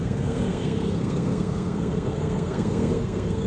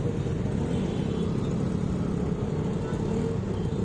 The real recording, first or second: second